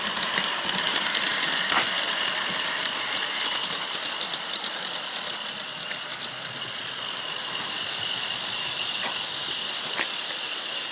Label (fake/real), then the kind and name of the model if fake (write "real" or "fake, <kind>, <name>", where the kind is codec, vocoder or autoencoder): real